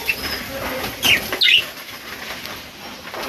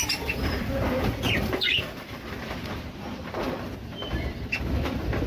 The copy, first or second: second